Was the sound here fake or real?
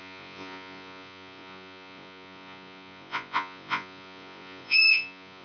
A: fake